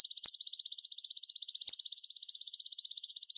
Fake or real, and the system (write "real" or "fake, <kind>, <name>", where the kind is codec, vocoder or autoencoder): real